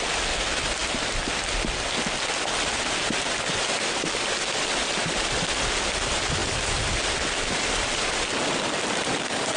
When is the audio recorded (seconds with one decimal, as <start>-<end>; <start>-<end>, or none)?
0.0-9.6